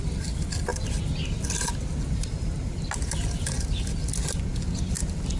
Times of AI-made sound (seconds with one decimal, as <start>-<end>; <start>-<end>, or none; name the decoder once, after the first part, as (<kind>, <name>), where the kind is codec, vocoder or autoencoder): none